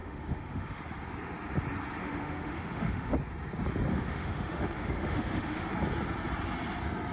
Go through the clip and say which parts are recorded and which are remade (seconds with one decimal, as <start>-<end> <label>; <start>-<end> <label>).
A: 0.0-0.8 remade; 0.8-2.0 recorded; 2.0-3.1 remade; 3.1-3.9 recorded; 3.9-5.7 remade; 5.7-7.1 recorded